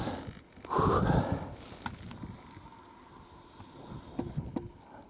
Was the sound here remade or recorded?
recorded